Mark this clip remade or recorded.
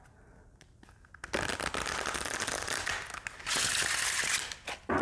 recorded